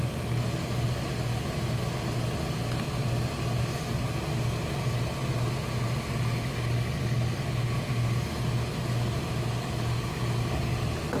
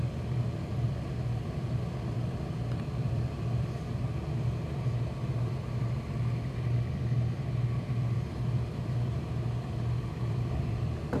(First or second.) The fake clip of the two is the second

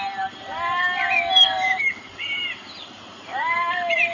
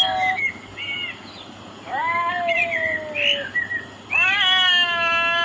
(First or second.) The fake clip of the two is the first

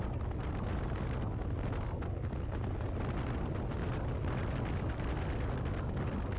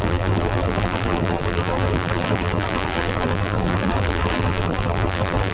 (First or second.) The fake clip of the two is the second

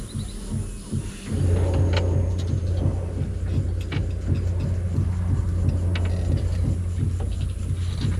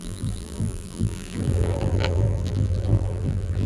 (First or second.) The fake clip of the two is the second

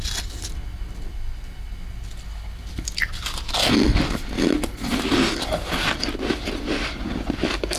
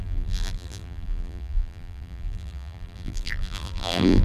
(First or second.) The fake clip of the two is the second